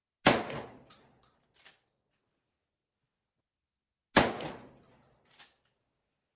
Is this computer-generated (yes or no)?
no